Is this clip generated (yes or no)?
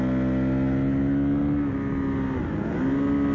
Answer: no